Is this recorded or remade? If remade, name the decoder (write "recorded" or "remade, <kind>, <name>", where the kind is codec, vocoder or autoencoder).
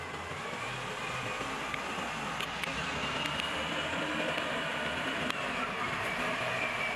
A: recorded